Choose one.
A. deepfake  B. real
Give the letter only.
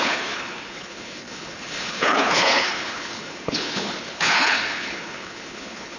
A